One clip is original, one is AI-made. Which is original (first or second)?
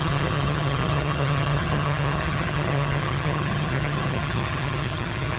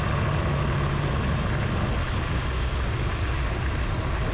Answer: second